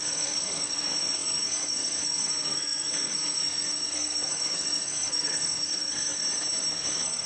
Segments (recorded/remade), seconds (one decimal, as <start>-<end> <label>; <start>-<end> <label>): 0.0-6.2 remade; 6.2-6.7 recorded; 6.7-7.3 remade